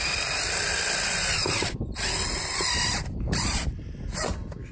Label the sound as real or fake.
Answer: real